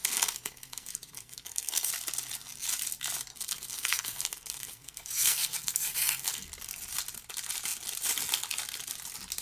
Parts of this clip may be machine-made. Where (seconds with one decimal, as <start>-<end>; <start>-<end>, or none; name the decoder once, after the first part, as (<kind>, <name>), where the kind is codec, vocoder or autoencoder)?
0.0-1.9 (codec, SNAC); 3.3-6.5